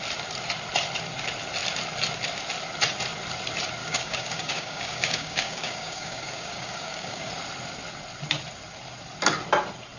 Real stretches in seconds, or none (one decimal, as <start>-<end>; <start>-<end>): 0.0-3.8; 7.3-10.0